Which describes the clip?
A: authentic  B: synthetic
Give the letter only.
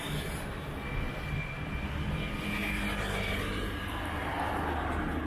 A